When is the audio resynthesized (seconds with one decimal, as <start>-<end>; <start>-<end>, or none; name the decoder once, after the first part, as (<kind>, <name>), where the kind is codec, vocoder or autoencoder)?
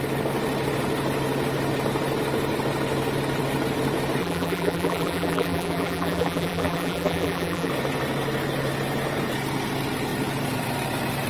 4.2-7.7 (vocoder, BigVGAN v2)